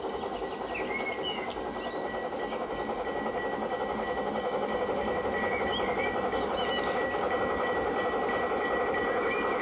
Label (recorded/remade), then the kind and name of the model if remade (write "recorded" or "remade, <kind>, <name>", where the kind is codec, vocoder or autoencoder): recorded